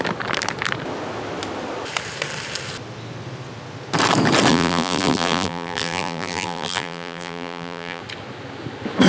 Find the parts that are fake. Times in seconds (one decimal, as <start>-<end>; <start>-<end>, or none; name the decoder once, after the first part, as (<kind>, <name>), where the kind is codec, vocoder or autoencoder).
4.5-8.0 (vocoder, BigVGAN v2)